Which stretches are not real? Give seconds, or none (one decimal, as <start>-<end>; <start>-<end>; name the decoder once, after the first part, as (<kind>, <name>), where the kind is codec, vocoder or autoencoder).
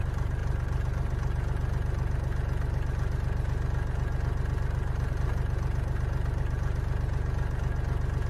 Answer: none